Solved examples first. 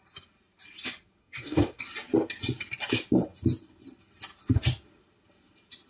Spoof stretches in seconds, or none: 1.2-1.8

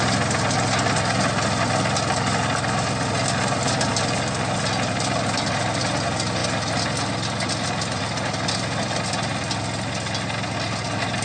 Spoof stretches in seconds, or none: none

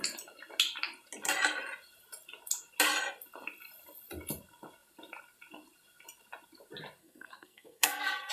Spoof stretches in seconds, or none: 7.0-8.3

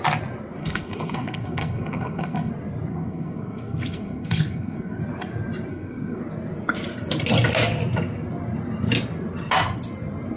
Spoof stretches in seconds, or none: 0.6-2.5; 2.9-5.0; 5.7-6.2

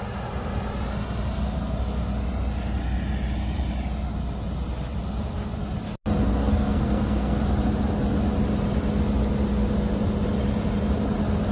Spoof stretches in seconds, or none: 6.3-7.4